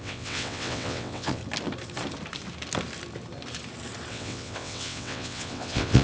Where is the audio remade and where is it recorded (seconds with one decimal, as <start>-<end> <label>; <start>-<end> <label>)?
0.0-1.4 remade; 1.4-4.1 recorded; 4.1-6.0 remade